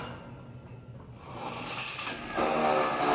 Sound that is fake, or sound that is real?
real